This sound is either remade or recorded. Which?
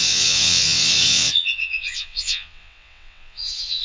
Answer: remade